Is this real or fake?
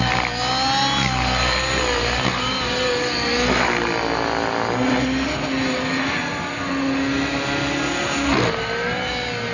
real